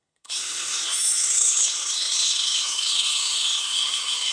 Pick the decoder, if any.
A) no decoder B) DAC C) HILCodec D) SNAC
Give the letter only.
D